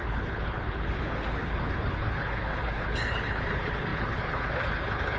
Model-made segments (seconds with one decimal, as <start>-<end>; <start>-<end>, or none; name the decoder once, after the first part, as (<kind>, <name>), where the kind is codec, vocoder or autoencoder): 0.0-5.2 (codec, HILCodec)